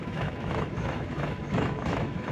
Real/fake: fake